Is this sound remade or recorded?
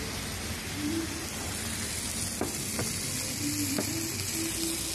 recorded